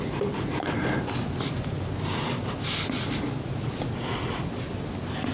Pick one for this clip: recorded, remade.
recorded